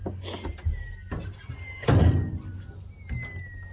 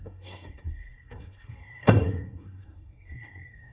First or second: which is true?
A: first